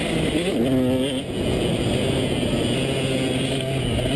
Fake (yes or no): no